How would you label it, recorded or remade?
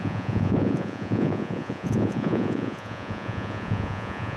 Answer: remade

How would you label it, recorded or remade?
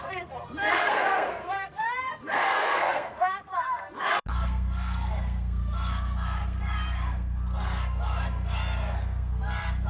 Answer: remade